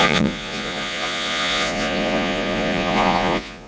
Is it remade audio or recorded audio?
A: remade